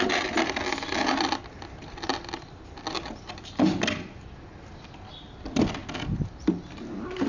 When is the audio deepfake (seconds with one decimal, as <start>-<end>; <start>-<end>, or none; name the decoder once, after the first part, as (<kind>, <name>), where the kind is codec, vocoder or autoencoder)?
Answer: none